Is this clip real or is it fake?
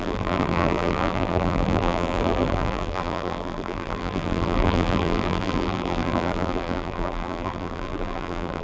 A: fake